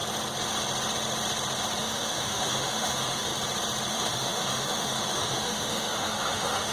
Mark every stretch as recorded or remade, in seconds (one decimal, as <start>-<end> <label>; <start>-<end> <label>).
0.0-1.8 recorded; 1.8-3.3 remade; 3.3-3.9 recorded; 3.9-6.7 remade